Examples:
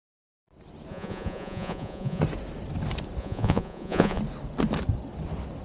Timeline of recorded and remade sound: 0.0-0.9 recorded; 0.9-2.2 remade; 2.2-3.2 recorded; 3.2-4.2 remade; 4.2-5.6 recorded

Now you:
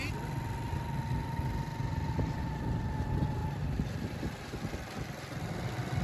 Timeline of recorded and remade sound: 0.0-1.7 recorded; 1.7-2.6 remade; 2.6-3.4 recorded; 3.4-4.7 remade; 4.7-6.0 recorded

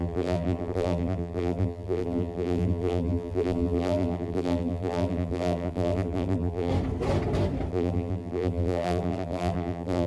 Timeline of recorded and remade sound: 0.0-6.7 remade; 6.7-7.7 recorded; 7.7-10.1 remade

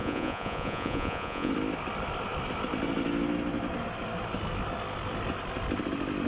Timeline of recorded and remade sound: 0.0-1.5 remade; 1.5-6.3 recorded

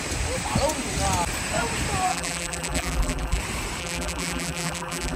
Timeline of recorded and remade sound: 0.0-2.1 recorded; 2.1-3.4 remade; 3.4-3.8 recorded; 3.8-5.2 remade

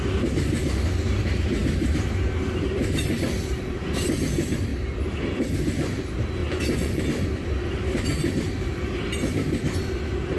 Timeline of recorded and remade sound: 0.0-6.4 recorded; 6.4-7.0 remade; 7.0-10.4 recorded